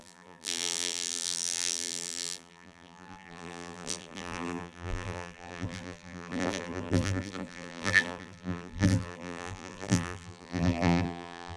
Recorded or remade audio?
remade